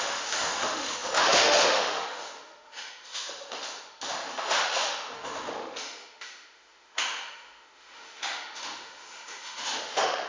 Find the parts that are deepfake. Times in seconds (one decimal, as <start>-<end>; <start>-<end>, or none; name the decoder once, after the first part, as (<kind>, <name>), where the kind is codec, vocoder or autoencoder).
0.0-10.3 (autoencoder, DAC-VAE)